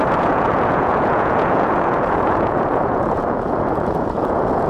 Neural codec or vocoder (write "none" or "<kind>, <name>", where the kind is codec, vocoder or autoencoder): vocoder, Vocos